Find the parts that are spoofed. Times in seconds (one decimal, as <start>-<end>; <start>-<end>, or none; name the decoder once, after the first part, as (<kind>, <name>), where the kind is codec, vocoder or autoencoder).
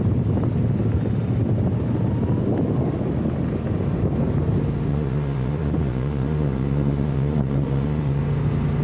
4.9-8.2 (vocoder, Vocos)